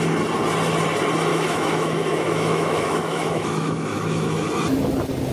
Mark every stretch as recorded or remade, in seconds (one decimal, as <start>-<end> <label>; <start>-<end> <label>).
0.0-1.3 recorded; 1.3-4.5 remade; 4.5-5.3 recorded